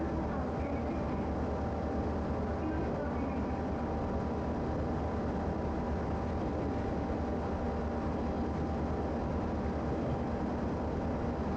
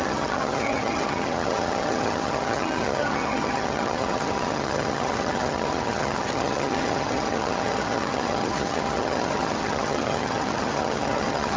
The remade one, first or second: second